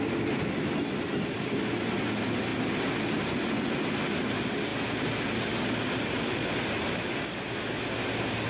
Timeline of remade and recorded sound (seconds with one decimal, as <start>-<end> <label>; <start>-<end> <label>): 0.0-8.5 recorded